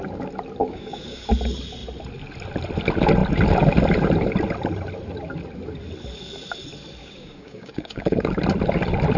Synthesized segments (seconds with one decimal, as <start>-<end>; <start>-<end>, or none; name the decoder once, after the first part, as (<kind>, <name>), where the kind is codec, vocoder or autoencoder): 0.6-1.3 (codec, DAC); 7.0-8.3